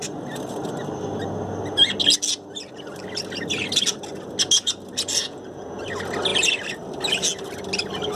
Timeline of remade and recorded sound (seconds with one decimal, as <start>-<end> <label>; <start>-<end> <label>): 0.0-5.2 recorded; 5.2-5.8 remade; 5.8-8.2 recorded